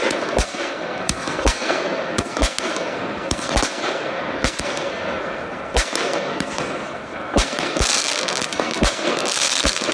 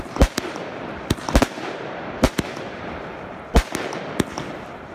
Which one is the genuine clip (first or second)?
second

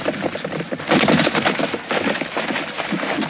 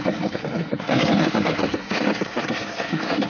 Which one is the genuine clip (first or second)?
first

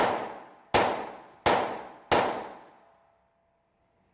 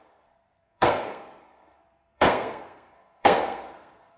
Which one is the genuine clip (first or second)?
first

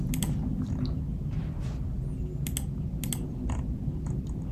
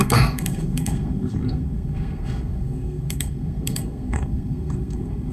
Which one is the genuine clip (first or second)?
first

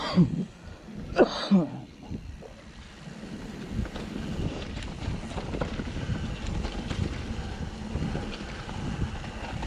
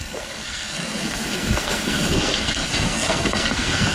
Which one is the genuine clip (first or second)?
first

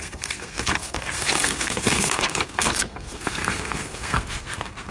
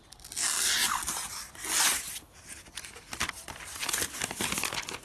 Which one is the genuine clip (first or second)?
second